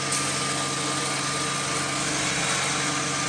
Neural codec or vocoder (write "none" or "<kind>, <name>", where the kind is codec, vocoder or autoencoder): none